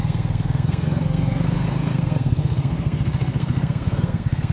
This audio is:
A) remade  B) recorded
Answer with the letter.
A